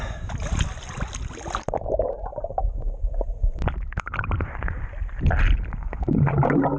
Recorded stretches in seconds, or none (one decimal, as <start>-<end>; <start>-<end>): 0.0-2.3; 5.1-6.8